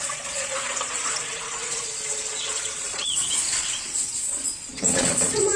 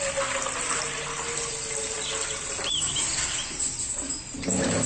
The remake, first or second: first